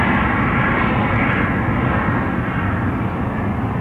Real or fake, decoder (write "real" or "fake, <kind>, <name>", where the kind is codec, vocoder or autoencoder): real